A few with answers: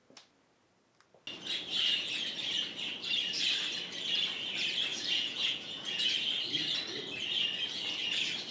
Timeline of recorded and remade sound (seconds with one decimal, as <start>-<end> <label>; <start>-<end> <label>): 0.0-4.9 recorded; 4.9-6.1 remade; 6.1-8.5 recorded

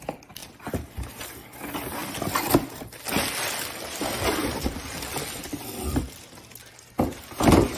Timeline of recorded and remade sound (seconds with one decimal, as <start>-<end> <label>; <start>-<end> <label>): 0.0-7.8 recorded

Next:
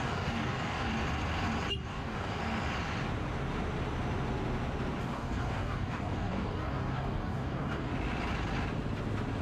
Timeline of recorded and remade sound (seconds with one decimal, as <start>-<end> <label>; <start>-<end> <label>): 0.0-0.9 remade; 0.9-1.9 recorded; 1.9-2.4 remade; 2.4-5.0 recorded; 5.0-7.9 remade; 7.9-9.4 recorded